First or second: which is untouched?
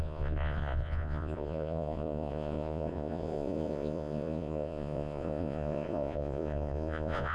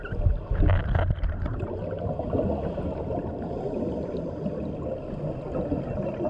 second